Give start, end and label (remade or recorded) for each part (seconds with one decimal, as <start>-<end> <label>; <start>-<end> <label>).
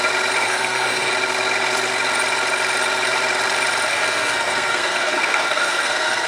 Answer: 0.0-0.4 recorded; 0.4-1.1 remade; 1.1-3.9 recorded; 3.9-6.3 remade